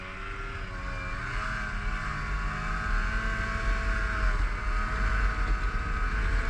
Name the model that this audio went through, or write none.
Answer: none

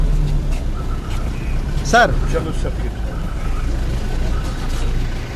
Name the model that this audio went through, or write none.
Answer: none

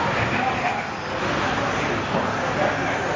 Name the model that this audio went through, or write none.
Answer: none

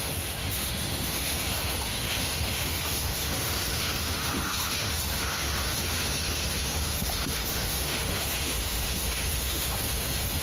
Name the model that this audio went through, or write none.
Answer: autoencoder, DAC-VAE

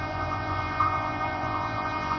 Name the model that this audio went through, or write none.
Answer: vocoder, Vocos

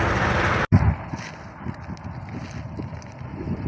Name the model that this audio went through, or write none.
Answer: none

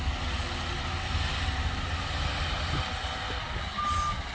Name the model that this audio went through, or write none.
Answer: none